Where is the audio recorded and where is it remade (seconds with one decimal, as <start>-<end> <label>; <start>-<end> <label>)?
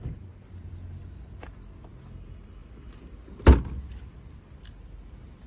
0.0-5.5 recorded